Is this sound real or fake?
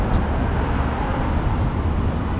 real